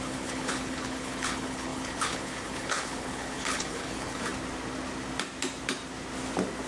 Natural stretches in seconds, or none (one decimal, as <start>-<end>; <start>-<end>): 4.3-6.7